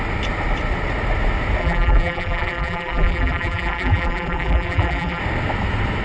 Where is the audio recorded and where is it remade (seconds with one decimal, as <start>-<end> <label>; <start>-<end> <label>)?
0.0-1.6 recorded; 1.6-5.2 remade; 5.2-6.0 recorded